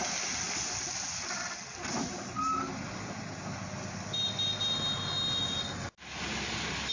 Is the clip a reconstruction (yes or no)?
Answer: no